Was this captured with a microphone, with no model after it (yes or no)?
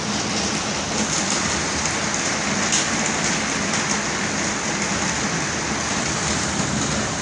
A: yes